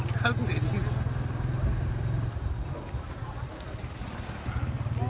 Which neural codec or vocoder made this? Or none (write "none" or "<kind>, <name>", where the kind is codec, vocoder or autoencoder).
none